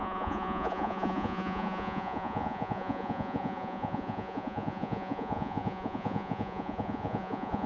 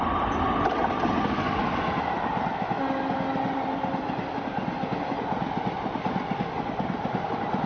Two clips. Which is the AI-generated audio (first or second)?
first